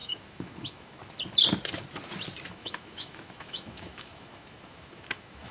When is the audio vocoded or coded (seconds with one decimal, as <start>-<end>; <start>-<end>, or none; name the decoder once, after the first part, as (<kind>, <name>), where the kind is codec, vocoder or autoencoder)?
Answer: 0.0-1.0 (autoencoder, DAC-VAE); 2.5-5.5